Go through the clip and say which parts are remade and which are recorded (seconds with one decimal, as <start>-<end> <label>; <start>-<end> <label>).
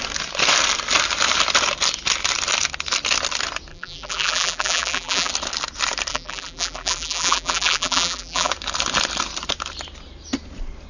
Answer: 0.0-3.7 recorded; 3.7-5.3 remade; 5.3-6.1 recorded; 6.1-8.5 remade; 8.5-10.9 recorded